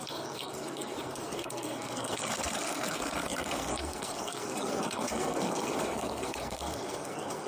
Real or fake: fake